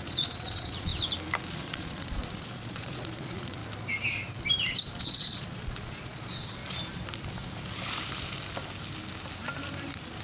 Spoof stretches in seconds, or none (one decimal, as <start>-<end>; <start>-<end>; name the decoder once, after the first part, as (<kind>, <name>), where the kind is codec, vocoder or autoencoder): 0.0-0.9 (vocoder, Vocos); 1.5-3.6; 5.0-6.6